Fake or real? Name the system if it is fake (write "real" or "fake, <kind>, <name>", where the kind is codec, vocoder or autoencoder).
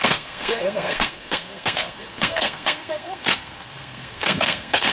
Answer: fake, codec, SNAC